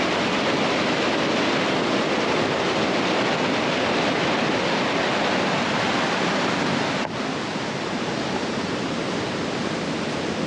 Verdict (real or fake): real